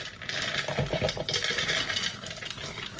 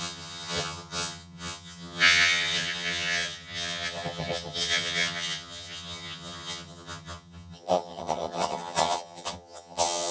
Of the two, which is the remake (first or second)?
second